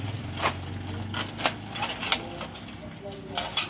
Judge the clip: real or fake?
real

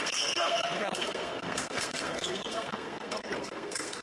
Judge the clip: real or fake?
fake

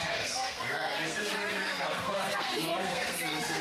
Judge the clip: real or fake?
fake